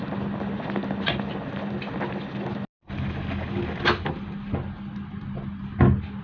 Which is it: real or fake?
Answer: real